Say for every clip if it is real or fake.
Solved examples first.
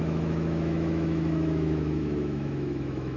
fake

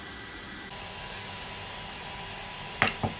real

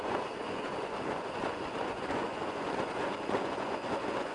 fake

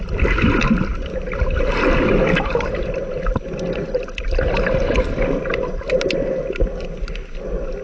real